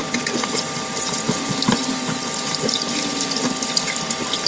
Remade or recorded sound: remade